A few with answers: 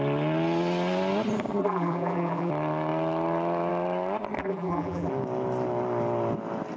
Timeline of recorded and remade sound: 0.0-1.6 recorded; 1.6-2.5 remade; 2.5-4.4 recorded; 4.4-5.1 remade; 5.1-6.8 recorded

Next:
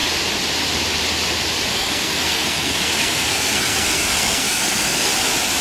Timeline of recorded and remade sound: 0.0-1.7 recorded; 1.7-5.1 remade; 5.1-5.6 recorded

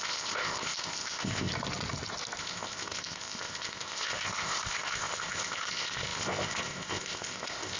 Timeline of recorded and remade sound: 0.0-1.5 remade; 1.5-2.4 recorded; 2.4-7.8 remade

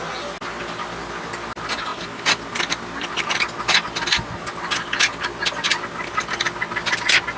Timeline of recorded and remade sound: 0.0-7.4 recorded

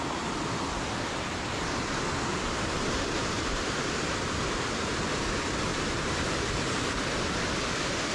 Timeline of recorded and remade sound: 0.0-2.3 recorded; 2.3-4.1 remade; 4.1-5.7 recorded; 5.7-6.5 remade; 6.5-8.1 recorded

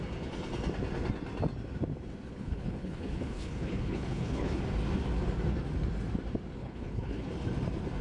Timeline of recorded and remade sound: 0.0-2.3 recorded; 2.3-4.6 remade; 4.6-6.6 recorded; 6.6-7.3 remade; 7.3-8.0 recorded

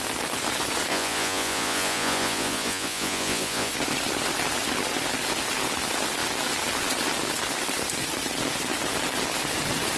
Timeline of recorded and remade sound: 0.0-0.9 recorded; 0.9-3.7 remade; 3.7-10.0 recorded